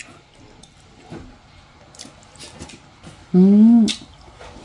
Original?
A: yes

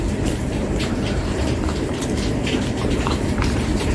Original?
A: no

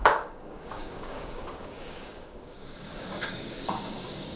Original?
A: no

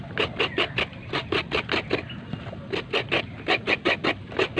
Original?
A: yes